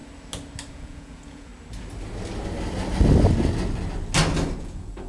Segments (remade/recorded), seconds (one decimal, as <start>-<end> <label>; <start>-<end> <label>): 0.0-0.7 recorded; 0.7-1.5 remade; 1.5-4.6 recorded; 4.6-5.1 remade